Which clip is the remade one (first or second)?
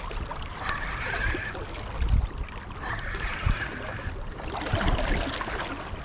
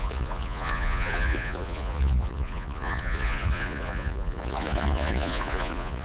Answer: second